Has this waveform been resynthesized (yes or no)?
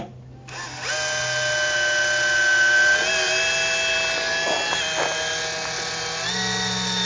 no